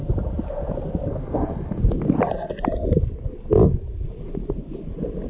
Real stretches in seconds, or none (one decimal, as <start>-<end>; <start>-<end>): 0.0-1.1; 1.8-5.3